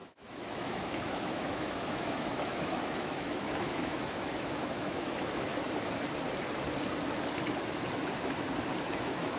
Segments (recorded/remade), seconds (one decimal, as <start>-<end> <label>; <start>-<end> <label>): 0.0-5.5 remade; 5.5-8.8 recorded; 8.8-9.4 remade